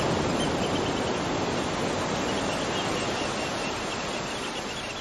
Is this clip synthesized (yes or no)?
no